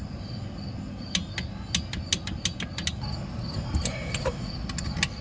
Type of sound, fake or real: real